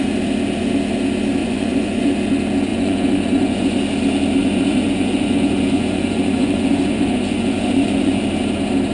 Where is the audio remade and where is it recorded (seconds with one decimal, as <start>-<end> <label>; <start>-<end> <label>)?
0.0-1.4 recorded; 1.4-2.1 remade; 2.1-2.7 recorded; 2.7-3.8 remade; 3.8-4.4 recorded; 4.4-8.2 remade; 8.2-8.9 recorded